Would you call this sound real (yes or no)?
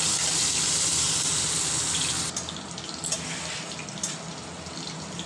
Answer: yes